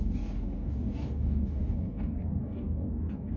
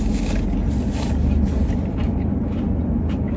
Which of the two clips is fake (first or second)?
first